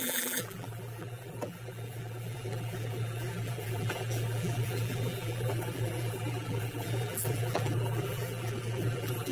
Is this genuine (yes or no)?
no